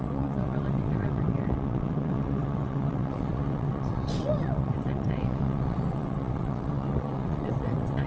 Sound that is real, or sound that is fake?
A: fake